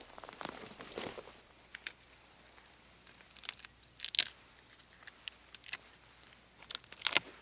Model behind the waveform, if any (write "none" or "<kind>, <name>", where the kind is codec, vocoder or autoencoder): none